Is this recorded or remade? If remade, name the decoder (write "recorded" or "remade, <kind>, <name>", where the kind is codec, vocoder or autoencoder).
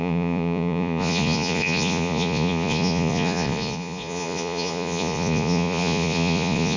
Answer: remade, vocoder, Vocos